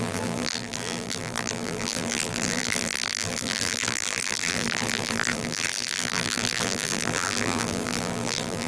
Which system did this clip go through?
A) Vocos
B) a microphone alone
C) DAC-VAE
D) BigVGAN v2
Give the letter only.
D